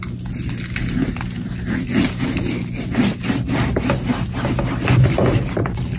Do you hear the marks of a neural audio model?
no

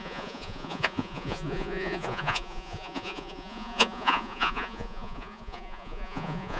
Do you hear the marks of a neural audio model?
yes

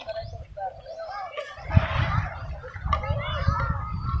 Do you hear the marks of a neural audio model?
no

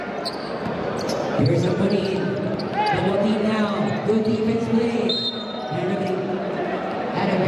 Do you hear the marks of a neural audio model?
yes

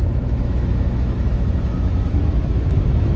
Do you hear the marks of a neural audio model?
yes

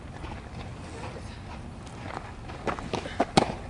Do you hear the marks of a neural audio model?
no